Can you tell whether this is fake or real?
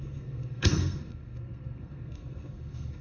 fake